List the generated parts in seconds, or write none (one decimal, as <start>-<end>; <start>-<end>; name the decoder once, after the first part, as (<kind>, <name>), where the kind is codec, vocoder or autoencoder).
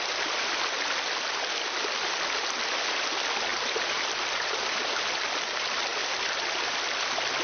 3.5-4.9 (vocoder, BigVGAN v2); 5.9-7.0